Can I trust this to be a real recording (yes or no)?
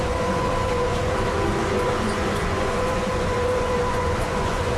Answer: no